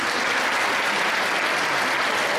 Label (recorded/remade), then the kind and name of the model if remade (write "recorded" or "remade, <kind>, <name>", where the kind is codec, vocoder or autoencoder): recorded